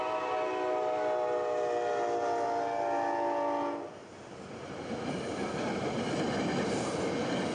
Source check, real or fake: real